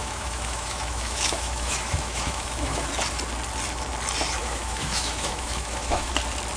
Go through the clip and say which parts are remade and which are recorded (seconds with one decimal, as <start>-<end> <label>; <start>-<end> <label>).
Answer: 0.0-2.9 remade; 2.9-4.4 recorded; 4.4-6.1 remade; 6.1-6.6 recorded